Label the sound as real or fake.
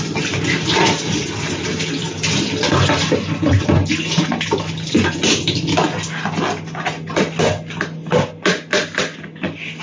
real